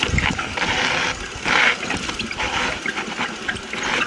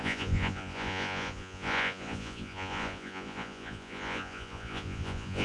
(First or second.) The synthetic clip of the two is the second